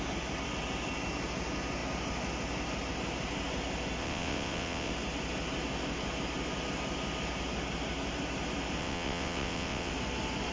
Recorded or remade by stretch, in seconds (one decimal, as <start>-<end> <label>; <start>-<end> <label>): 0.0-4.0 recorded; 4.0-4.9 remade; 4.9-8.8 recorded; 8.8-9.9 remade; 9.9-10.5 recorded